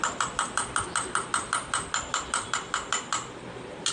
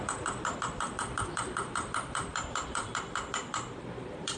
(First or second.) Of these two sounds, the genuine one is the first